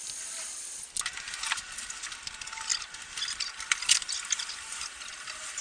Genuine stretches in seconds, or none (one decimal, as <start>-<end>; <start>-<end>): 0.0-5.6